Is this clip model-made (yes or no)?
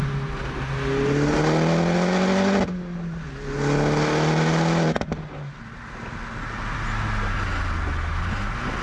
no